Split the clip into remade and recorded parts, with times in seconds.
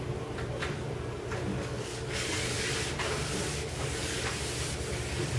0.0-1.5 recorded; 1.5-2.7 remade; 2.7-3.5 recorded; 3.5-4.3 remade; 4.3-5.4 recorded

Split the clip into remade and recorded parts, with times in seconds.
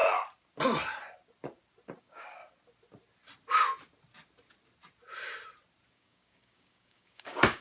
0.0-2.0 recorded; 2.0-2.4 remade; 2.4-5.9 recorded; 5.9-7.6 remade